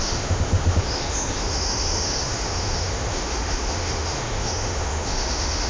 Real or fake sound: fake